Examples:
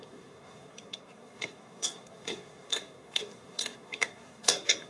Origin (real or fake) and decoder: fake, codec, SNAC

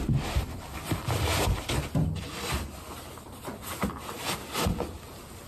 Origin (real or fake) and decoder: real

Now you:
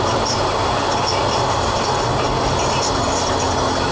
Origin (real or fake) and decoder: real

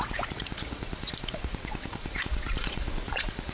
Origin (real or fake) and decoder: fake, vocoder, Vocos